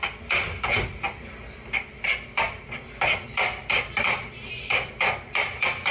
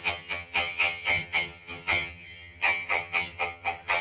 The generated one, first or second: second